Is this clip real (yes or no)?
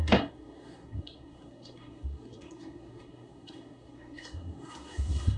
no